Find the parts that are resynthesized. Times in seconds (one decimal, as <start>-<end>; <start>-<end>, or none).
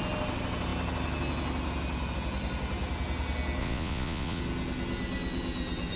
3.6-4.4